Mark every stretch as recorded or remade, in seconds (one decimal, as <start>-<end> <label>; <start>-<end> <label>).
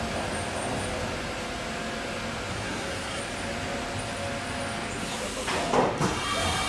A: 0.0-2.5 recorded; 2.5-3.2 remade; 3.2-6.7 recorded